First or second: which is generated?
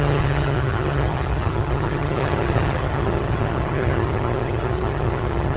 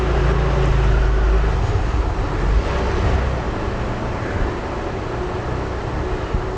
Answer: first